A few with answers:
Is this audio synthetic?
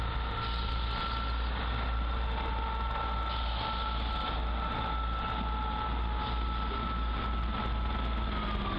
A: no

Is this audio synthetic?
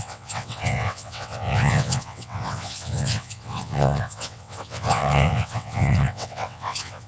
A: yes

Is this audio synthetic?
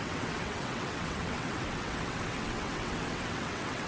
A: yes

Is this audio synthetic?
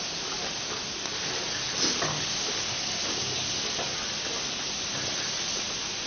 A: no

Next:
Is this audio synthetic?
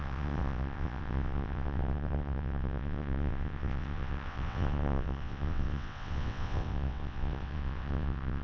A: yes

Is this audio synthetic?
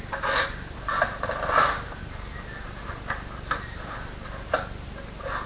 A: no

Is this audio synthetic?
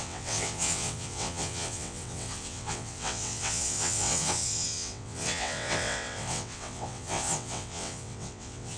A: yes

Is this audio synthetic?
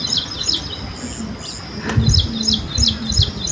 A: no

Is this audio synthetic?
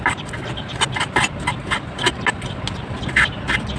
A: no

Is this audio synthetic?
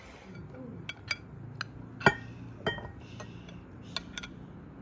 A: no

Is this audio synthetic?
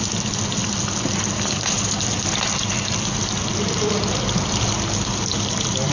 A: no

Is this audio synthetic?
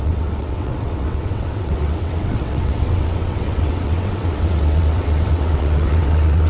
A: yes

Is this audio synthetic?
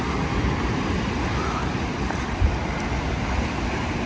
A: no